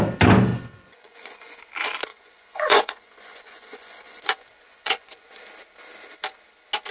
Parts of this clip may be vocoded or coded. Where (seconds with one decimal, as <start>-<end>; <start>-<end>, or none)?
0.5-1.6; 2.1-5.4